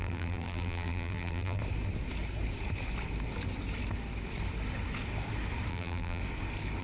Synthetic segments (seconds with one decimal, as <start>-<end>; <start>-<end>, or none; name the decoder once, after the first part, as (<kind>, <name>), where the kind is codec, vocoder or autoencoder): 0.0-1.6 (vocoder, BigVGAN v2); 5.7-6.2